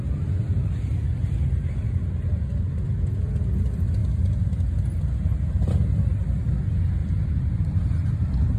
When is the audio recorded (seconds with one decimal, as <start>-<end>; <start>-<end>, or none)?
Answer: 0.0-8.6